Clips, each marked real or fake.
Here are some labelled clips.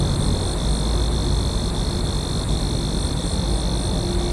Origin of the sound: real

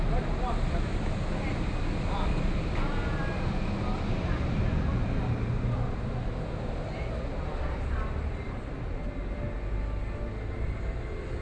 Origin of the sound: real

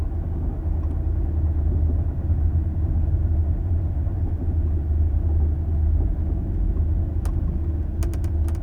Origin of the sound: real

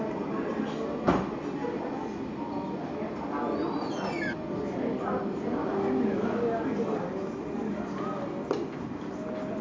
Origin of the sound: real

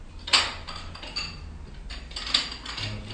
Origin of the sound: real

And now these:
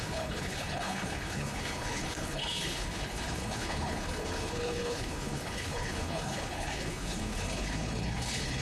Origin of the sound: fake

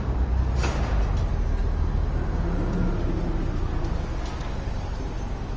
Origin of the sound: real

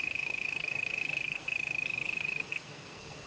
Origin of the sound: fake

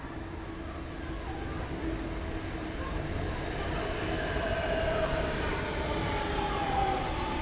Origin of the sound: real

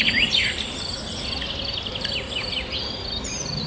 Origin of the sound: fake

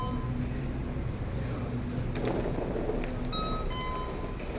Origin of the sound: real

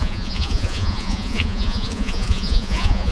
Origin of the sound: fake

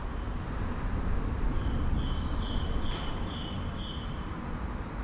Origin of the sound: fake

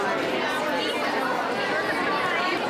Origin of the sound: real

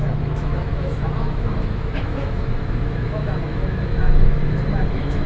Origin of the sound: fake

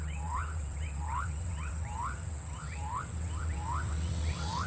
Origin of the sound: fake